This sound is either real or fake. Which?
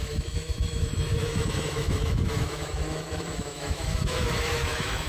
fake